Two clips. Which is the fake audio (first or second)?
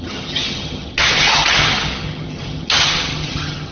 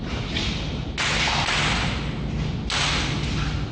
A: first